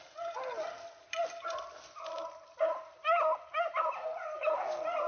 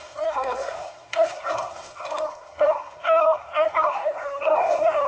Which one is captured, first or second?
first